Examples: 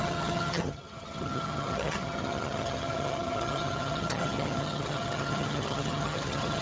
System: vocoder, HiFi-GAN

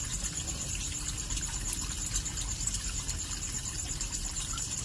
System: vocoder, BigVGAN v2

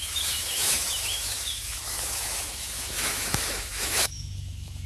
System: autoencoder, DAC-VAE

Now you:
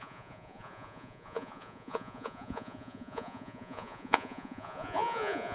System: vocoder, Vocos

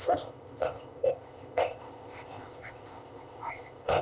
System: codec, ZipCodec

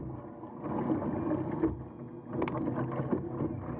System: none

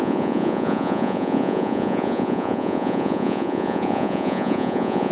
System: vocoder, Vocos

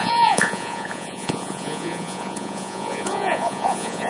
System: vocoder, Vocos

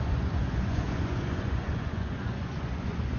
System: vocoder, Vocos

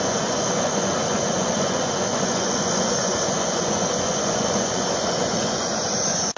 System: vocoder, Vocos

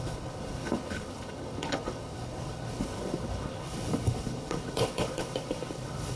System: codec, HILCodec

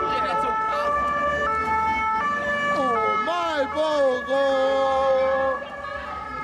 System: none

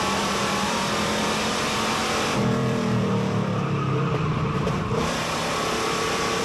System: vocoder, BigVGAN v2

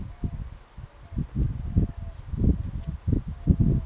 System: none